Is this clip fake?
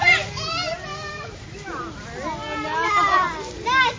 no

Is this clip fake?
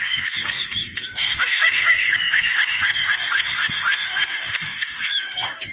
yes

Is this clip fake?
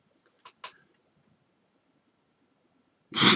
no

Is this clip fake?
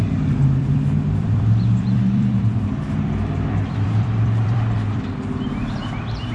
yes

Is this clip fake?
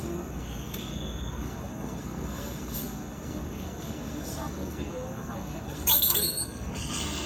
yes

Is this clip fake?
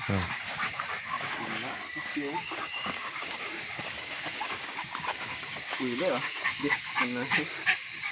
yes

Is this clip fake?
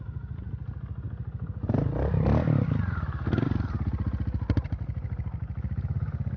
no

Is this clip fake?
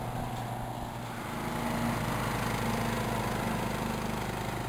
no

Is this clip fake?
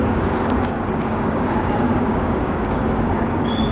yes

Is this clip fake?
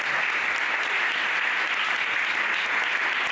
no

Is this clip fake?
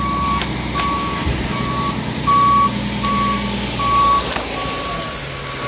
no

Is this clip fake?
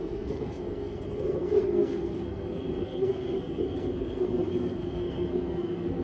yes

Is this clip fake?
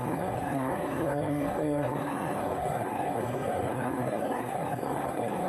yes